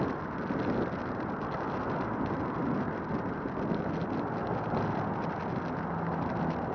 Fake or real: real